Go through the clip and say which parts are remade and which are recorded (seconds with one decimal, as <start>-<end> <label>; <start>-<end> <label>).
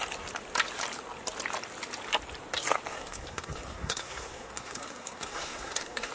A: 0.0-2.9 recorded; 2.9-6.1 remade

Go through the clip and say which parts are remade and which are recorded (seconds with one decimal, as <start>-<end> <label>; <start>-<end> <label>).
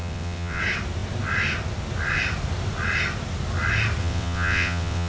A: 0.0-0.6 remade; 0.6-4.0 recorded; 4.0-5.1 remade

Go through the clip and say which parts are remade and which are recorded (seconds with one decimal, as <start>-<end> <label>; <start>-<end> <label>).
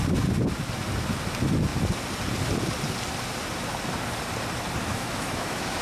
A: 0.0-4.8 recorded; 4.8-5.8 remade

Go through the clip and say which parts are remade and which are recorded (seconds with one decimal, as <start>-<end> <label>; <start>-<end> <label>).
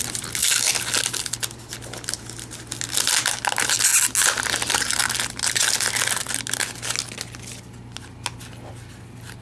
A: 0.0-9.4 recorded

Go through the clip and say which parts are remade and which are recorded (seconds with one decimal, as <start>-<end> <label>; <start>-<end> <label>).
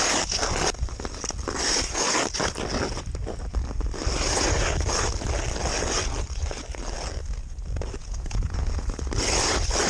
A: 0.0-8.0 recorded; 8.0-8.6 remade; 8.6-9.9 recorded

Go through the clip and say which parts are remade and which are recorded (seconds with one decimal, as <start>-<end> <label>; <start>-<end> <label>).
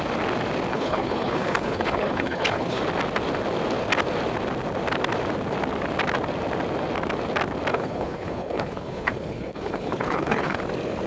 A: 0.0-0.7 recorded; 0.7-2.8 remade; 2.8-7.7 recorded; 7.7-10.6 remade; 10.6-11.1 recorded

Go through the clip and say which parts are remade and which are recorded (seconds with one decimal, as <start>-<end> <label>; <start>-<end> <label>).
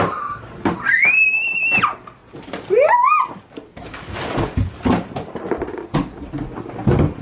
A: 0.0-7.2 recorded